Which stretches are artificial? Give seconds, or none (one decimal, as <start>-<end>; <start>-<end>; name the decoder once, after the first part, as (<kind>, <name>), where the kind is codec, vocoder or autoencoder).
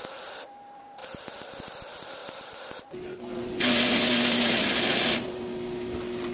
1.0-1.6 (vocoder, BigVGAN v2); 2.2-2.9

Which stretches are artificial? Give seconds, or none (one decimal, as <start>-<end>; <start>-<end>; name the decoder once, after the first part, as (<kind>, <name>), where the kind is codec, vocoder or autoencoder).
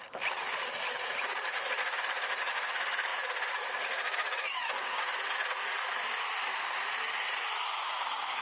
0.0-3.1 (vocoder, BigVGAN v2); 6.5-8.4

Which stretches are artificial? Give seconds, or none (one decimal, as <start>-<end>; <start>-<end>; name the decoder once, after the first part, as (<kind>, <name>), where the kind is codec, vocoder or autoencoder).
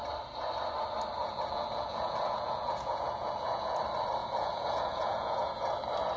1.2-3.8 (vocoder, Vocos); 4.2-5.7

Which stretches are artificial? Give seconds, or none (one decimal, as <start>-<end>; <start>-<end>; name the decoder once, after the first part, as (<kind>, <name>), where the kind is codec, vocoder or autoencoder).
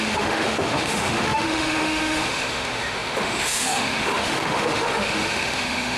0.0-6.0 (autoencoder, DAC-VAE)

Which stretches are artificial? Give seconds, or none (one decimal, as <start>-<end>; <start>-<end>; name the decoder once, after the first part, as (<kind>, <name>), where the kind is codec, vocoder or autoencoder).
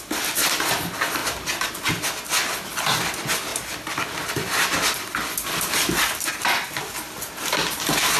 3.5-6.3 (vocoder, BigVGAN v2)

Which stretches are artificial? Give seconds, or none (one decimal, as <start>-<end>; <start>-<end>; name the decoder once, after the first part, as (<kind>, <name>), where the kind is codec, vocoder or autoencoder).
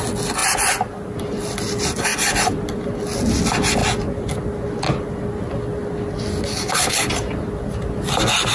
6.5-7.1 (codec, HILCodec)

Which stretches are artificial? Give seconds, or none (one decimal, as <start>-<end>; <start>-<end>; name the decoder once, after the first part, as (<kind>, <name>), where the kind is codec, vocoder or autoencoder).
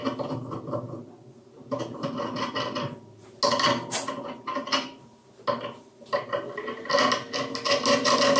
none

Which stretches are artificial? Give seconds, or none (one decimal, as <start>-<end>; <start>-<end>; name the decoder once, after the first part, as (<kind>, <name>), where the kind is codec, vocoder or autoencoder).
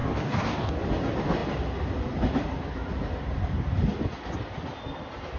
0.0-0.8 (codec, DAC)